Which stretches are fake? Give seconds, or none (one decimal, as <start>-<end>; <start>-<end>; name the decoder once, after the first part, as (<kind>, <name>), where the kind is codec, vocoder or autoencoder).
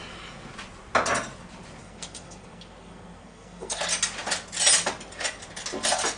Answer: 1.8-3.8 (codec, SNAC)